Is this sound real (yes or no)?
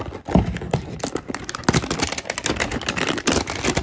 yes